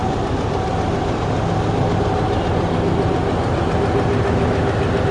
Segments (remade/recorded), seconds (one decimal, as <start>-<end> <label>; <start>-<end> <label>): 0.0-5.1 recorded